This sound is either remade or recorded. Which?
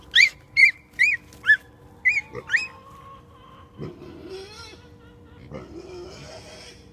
recorded